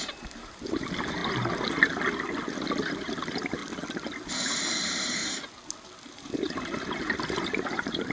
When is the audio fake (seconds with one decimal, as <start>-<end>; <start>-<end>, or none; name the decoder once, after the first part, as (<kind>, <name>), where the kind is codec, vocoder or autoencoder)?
0.0-1.2 (vocoder, BigVGAN v2); 2.8-3.6; 4.8-5.2; 6.2-8.1